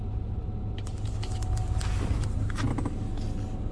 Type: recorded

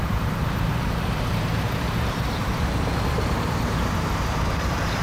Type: remade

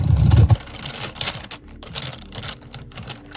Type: remade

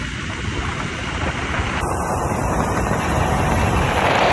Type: remade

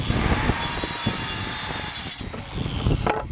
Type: recorded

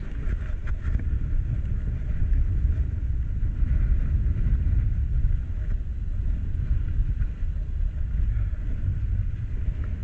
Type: recorded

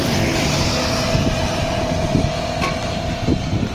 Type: recorded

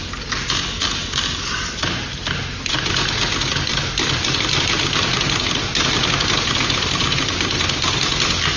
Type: recorded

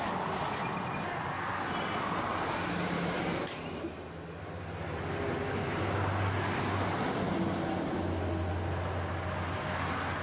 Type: recorded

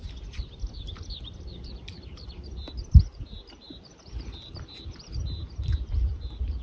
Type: remade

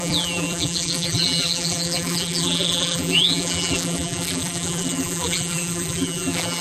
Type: remade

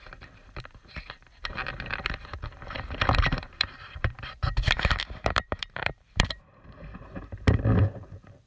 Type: remade